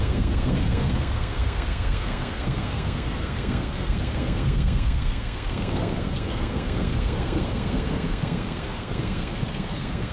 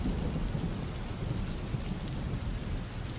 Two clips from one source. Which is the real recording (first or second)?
second